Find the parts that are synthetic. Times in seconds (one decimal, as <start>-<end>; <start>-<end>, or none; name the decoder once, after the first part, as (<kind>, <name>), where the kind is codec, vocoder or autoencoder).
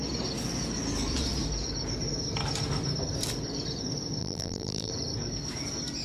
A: 4.2-4.9 (vocoder, BigVGAN v2)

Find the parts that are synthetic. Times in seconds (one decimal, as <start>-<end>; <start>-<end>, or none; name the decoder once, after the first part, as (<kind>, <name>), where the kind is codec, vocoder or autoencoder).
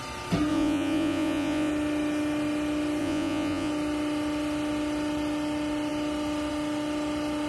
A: 0.5-1.7 (vocoder, Vocos); 3.0-3.7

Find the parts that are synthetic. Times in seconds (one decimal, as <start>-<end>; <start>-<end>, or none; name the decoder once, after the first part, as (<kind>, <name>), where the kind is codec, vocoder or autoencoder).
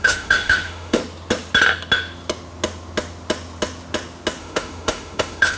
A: 0.0-1.0 (autoencoder, DAC-VAE); 4.4-5.6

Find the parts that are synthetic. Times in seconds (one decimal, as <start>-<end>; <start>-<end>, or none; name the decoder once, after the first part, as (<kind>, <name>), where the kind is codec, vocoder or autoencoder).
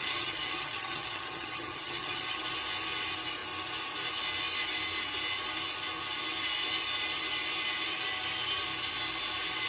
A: 0.0-2.4 (vocoder, HiFi-GAN)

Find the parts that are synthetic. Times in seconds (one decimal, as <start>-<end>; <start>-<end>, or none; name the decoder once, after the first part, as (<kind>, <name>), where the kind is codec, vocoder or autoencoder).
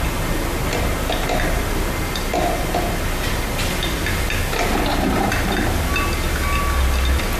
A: none